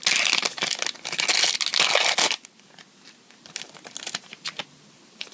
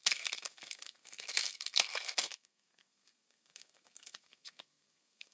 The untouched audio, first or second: first